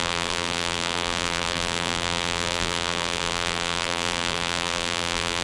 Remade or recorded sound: remade